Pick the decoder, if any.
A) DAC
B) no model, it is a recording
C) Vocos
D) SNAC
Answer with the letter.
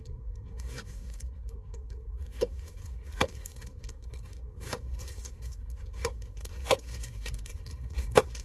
D